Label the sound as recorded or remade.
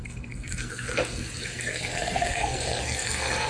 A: remade